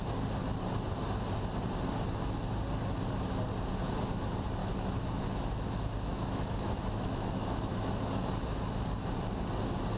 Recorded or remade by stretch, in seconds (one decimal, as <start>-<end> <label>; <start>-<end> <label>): 0.0-4.6 recorded; 4.6-8.1 remade; 8.1-10.0 recorded